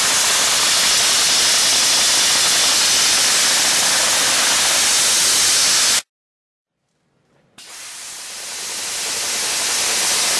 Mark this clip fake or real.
real